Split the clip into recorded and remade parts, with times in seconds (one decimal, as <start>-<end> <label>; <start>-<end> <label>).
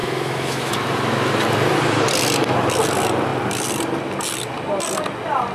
0.0-0.7 remade; 0.7-5.5 recorded